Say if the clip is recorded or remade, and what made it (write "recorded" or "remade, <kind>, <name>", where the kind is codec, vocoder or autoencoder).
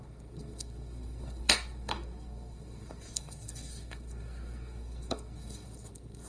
remade, codec, SNAC